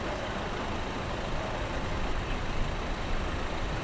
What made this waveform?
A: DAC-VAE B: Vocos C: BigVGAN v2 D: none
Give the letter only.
D